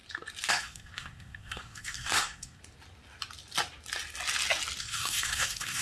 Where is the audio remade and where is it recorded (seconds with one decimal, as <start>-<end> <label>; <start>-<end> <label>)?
0.0-0.5 recorded; 0.5-2.6 remade; 2.6-4.8 recorded; 4.8-5.8 remade